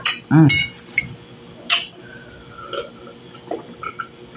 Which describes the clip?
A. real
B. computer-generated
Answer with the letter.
A